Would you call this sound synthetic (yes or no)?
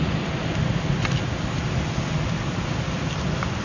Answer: no